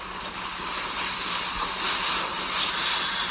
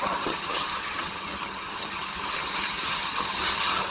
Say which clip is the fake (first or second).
second